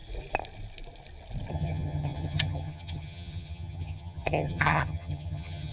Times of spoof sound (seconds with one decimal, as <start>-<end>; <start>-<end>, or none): 1.5-5.7